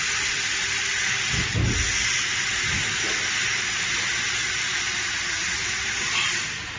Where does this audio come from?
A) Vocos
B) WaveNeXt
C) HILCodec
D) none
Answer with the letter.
D